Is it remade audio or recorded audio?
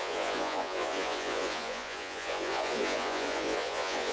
remade